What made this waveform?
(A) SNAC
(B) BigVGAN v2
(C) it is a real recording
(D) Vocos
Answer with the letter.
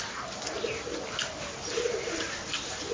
C